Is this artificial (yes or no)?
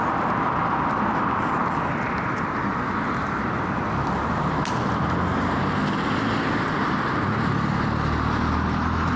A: no